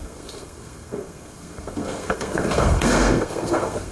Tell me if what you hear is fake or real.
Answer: fake